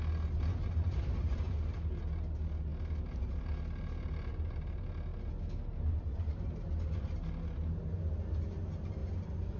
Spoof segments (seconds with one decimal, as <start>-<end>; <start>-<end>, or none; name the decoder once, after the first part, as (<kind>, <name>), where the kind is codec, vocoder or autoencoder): none